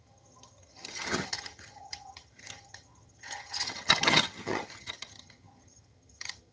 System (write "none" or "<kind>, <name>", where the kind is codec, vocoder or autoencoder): vocoder, HiFi-GAN